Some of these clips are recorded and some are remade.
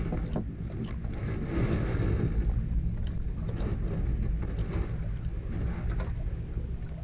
recorded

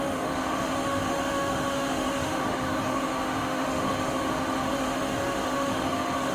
remade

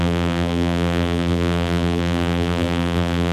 remade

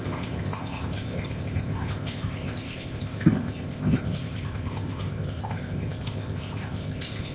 remade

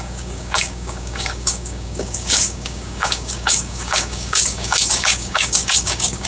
remade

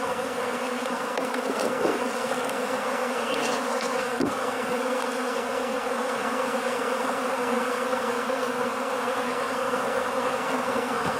remade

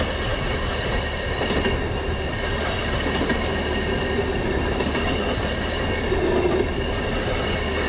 recorded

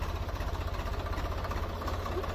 recorded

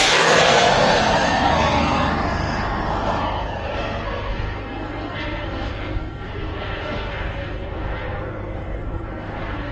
remade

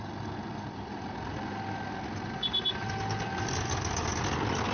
recorded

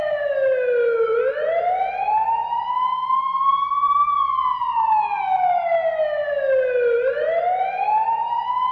recorded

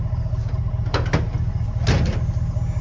recorded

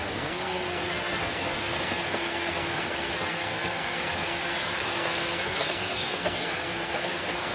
remade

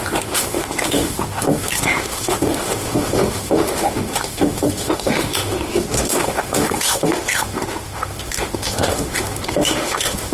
remade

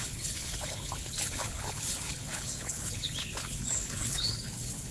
remade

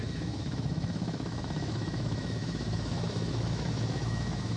remade